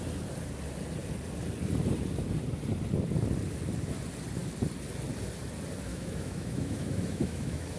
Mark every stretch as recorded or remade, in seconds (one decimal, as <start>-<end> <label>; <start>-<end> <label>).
0.0-5.9 recorded; 5.9-7.8 remade